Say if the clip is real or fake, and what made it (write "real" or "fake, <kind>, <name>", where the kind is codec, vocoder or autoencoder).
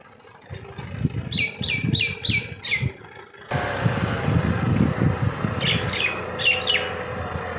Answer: real